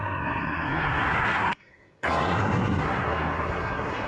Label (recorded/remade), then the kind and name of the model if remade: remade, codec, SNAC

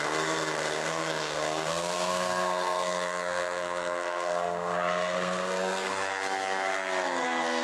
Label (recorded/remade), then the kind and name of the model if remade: remade, codec, SNAC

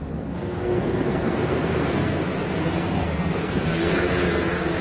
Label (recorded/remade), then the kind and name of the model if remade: remade, codec, SNAC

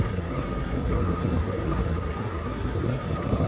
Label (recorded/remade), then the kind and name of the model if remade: remade, codec, SNAC